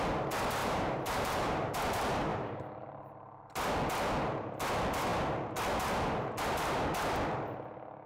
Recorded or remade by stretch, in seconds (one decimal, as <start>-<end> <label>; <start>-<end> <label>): 0.0-0.6 recorded; 0.6-1.7 remade; 1.7-2.3 recorded; 2.3-3.7 remade; 3.7-8.1 recorded